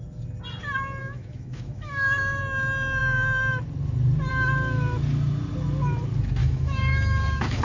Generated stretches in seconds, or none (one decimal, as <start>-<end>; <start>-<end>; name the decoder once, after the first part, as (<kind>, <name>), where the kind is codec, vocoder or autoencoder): 1.0-2.4 (autoencoder, DAC-VAE); 6.4-7.6